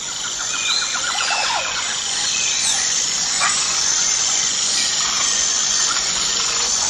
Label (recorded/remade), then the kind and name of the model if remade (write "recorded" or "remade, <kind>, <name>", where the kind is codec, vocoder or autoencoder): remade, vocoder, Vocos